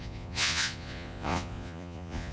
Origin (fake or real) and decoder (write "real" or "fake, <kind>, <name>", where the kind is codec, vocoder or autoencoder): fake, vocoder, Vocos